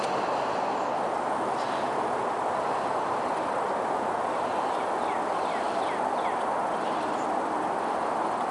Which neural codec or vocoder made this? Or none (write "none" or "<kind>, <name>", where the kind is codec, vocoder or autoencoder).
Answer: none